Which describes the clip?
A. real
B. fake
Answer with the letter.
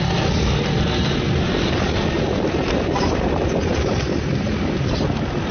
A